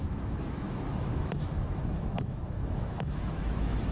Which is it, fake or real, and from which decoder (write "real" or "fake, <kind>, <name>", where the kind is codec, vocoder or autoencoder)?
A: fake, autoencoder, DAC-VAE